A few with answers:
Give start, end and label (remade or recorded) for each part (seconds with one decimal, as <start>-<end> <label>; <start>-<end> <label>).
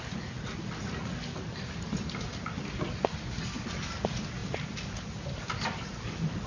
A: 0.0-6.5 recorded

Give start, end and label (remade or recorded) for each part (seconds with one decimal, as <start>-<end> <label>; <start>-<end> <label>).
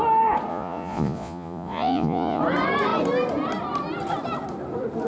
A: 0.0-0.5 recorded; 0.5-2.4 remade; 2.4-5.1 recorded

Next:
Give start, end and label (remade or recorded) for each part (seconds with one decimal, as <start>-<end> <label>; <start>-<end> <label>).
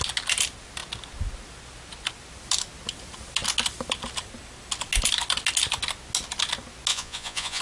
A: 0.0-6.9 recorded; 6.9-7.6 remade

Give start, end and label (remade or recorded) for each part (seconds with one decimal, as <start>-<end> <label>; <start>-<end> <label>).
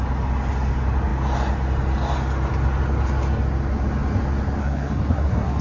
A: 0.0-4.6 recorded; 4.6-5.6 remade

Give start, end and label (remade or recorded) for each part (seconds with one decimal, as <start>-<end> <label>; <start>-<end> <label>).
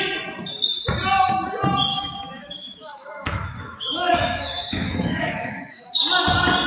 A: 0.0-1.9 recorded; 1.9-5.9 remade; 5.9-6.7 recorded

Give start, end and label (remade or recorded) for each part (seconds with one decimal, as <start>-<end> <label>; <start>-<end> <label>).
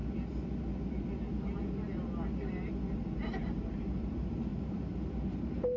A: 0.0-3.4 recorded; 3.4-5.8 remade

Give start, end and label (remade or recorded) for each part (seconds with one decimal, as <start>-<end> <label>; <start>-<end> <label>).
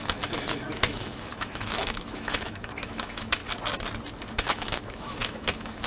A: 0.0-3.4 remade; 3.4-4.3 recorded; 4.3-5.9 remade